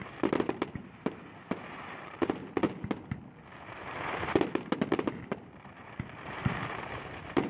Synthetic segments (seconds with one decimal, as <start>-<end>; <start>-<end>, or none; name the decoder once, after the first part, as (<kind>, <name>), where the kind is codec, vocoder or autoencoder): 0.0-2.4 (vocoder, BigVGAN v2); 3.7-7.5